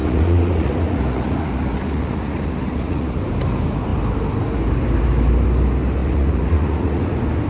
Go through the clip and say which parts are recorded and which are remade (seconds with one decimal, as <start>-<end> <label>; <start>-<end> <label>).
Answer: 0.0-3.2 remade; 3.2-6.0 recorded; 6.0-7.0 remade; 7.0-7.5 recorded